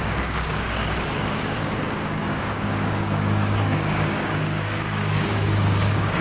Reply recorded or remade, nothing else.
remade